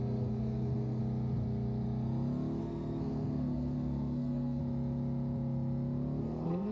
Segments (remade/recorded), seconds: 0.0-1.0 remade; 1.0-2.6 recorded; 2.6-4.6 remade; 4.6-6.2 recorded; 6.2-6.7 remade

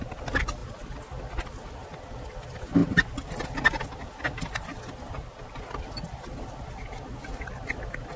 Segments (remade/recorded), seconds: 0.0-8.2 recorded